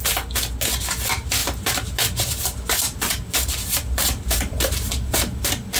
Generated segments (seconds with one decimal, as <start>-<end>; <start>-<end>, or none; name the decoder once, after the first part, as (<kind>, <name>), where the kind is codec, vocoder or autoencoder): 1.4-4.9 (vocoder, BigVGAN v2)